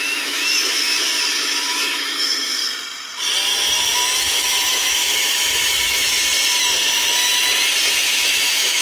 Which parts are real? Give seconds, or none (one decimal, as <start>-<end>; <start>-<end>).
2.6-4.2; 6.2-7.9